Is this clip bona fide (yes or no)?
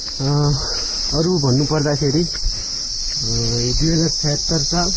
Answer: yes